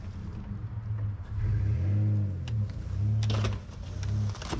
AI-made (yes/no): no